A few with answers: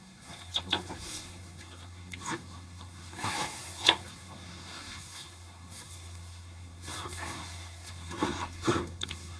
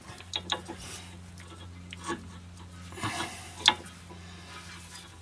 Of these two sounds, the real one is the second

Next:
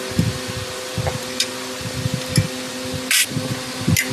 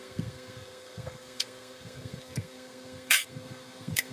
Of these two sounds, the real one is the first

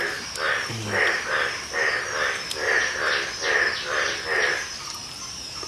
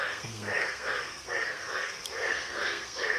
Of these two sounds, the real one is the first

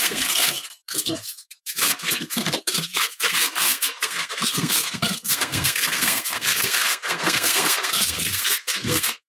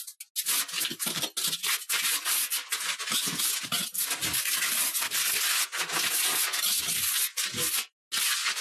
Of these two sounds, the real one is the second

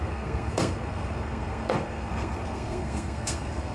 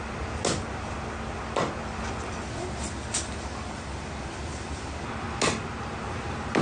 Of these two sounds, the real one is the second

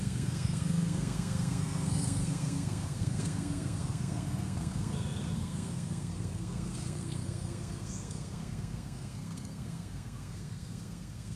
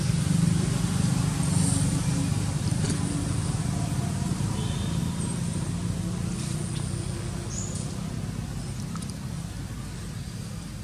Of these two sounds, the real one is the second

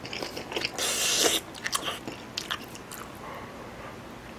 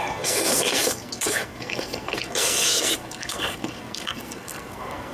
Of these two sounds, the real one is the first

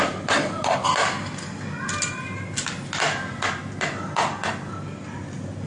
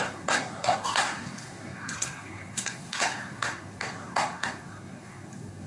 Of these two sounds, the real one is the first